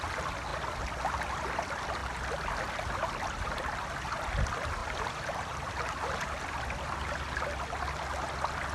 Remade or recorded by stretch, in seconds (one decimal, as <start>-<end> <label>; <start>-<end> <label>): 0.0-4.8 recorded; 4.8-5.7 remade; 5.7-8.7 recorded